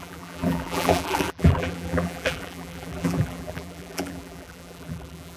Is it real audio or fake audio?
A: fake